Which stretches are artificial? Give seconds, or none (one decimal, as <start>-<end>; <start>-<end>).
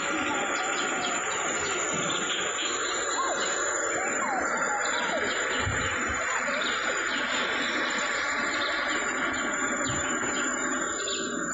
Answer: 2.8-4.0; 5.7-6.2; 6.8-11.0